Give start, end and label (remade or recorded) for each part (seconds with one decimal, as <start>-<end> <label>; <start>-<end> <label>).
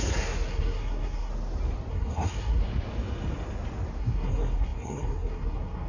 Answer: 0.0-1.3 remade; 1.3-1.9 recorded; 1.9-2.6 remade; 2.6-4.0 recorded; 4.0-5.9 remade